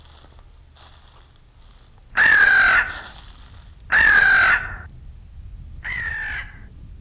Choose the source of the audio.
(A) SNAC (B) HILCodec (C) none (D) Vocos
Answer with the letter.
C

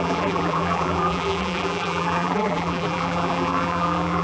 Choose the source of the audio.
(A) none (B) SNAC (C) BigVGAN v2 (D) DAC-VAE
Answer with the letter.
C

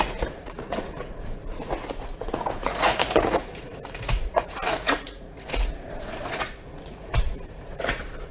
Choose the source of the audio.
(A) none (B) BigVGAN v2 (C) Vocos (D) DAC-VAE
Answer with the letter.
C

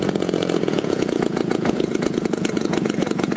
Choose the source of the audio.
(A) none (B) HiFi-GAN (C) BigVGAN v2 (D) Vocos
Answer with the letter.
D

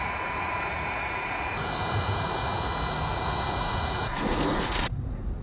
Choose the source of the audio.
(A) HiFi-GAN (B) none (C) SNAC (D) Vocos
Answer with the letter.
D